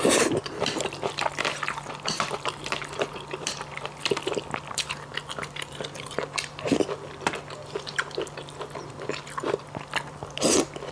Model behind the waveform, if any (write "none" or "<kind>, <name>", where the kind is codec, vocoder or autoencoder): vocoder, BigVGAN v2